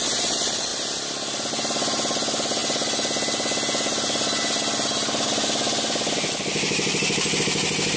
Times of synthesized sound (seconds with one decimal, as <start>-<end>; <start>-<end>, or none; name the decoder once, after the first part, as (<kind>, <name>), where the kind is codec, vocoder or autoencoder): none